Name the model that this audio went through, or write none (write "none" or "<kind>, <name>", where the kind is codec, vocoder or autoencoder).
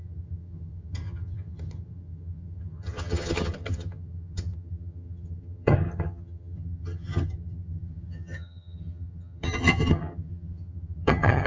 vocoder, HiFi-GAN